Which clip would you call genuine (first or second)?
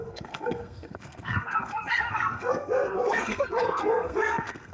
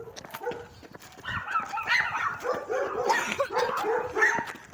second